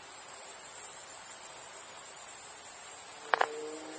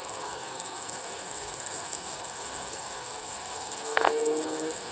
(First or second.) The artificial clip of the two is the second